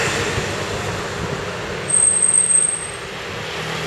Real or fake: real